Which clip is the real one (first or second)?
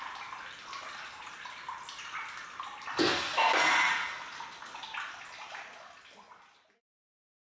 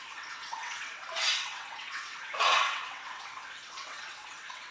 first